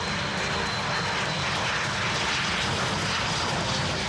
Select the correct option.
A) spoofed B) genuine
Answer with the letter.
B